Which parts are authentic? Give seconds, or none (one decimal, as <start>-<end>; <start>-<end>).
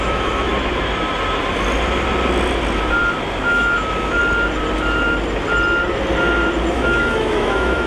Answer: 0.5-3.4; 4.2-6.7